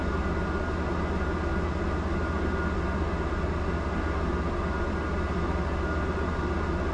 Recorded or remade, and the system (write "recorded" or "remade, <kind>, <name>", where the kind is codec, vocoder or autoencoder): recorded